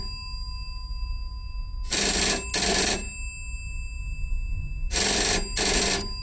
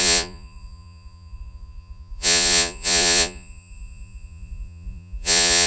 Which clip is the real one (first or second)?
first